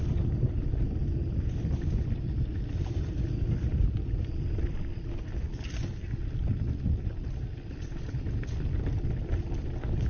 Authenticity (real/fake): real